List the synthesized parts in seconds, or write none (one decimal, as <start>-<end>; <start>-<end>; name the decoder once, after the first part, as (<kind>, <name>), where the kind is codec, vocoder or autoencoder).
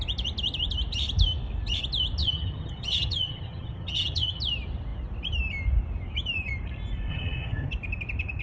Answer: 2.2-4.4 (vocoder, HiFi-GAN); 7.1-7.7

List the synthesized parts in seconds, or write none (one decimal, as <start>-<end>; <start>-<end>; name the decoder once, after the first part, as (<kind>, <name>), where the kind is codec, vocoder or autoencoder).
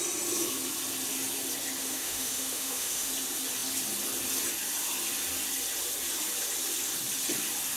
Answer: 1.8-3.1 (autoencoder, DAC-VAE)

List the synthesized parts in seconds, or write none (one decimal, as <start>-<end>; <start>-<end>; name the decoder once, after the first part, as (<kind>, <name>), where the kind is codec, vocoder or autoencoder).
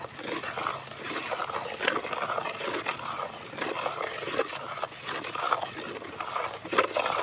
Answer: none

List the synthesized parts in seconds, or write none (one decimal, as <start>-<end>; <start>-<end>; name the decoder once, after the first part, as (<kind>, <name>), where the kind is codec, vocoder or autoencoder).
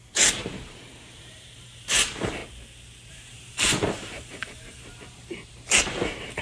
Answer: 0.0-2.4 (vocoder, BigVGAN v2); 3.1-6.4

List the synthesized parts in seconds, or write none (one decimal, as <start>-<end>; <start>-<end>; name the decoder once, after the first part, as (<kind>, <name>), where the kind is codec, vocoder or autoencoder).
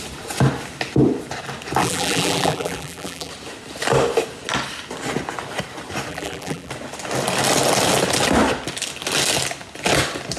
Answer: 1.8-3.3 (vocoder, BigVGAN v2); 6.1-6.7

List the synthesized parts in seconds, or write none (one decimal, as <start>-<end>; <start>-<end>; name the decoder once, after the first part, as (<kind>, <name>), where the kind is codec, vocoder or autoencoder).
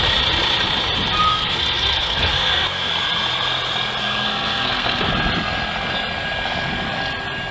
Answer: 1.3-2.9 (codec, SNAC); 4.0-5.1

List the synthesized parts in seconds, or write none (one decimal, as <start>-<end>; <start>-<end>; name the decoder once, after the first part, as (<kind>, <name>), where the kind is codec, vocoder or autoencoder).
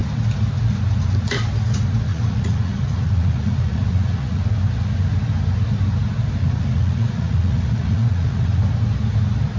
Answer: 2.1-4.4 (vocoder, Vocos); 6.4-8.6